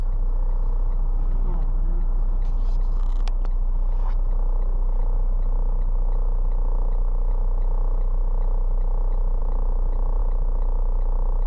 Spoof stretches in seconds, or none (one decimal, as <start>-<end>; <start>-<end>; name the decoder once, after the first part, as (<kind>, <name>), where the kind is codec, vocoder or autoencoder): none